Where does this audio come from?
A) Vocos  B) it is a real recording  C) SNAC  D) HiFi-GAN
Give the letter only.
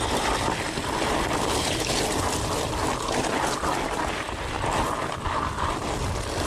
B